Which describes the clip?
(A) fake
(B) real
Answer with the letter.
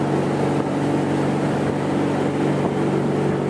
B